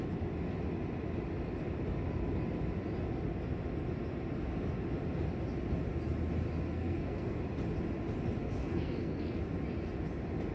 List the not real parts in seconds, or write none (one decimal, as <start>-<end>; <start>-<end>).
6.7-7.4; 8.4-9.4

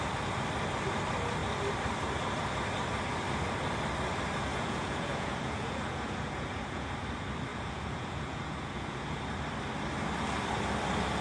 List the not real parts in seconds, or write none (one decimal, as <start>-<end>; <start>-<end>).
4.5-6.9; 7.5-9.2

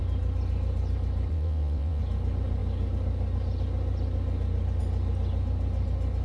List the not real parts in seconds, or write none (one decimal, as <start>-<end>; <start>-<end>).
1.3-2.0